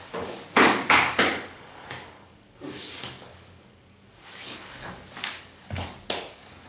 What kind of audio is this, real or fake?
fake